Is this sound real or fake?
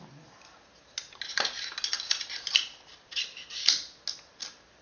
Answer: real